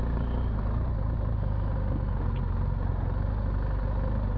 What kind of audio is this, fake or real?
real